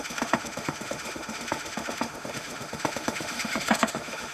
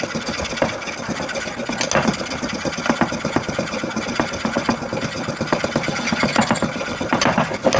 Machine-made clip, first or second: first